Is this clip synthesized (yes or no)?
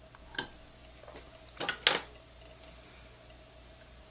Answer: no